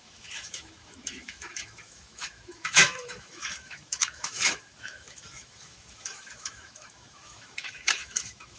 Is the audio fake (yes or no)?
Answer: yes